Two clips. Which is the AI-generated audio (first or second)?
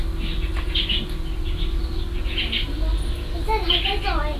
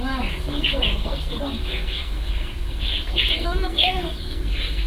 second